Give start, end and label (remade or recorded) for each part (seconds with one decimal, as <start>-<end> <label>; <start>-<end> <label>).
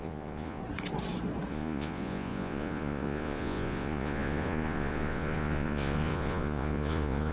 0.0-0.6 remade; 0.6-1.5 recorded; 1.5-7.3 remade